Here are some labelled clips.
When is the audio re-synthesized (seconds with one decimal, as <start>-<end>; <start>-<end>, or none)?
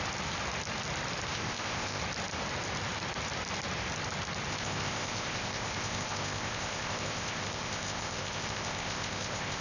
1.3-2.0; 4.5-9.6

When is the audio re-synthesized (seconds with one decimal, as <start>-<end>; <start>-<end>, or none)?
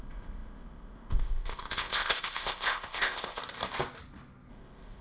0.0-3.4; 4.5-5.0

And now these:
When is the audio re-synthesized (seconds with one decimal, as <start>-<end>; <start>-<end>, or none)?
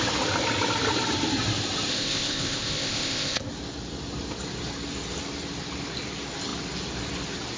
1.9-3.5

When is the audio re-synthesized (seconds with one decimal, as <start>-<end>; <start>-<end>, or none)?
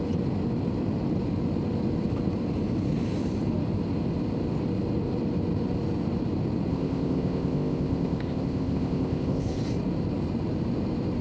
6.7-9.6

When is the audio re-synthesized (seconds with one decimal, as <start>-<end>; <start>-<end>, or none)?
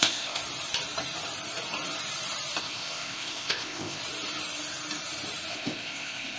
0.0-0.4; 2.6-4.0; 5.5-6.4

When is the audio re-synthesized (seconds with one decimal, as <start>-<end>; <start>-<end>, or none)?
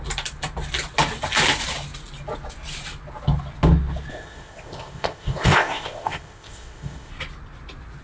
4.1-7.1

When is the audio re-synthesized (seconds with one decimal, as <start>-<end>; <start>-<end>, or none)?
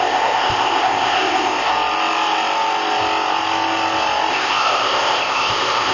0.0-1.7; 4.3-5.9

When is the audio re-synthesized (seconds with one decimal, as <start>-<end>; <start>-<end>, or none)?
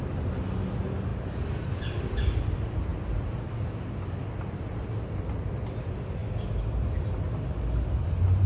none